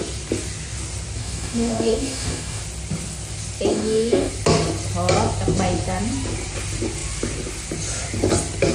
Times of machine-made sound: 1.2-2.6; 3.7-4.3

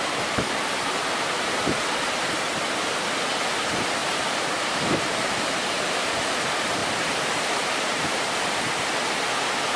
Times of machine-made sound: 4.0-6.2; 6.8-8.2